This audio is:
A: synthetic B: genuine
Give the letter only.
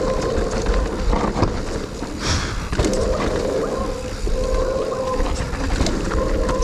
B